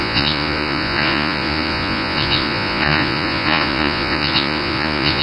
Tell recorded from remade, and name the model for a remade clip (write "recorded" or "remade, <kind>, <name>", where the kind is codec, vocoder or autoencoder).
remade, vocoder, Vocos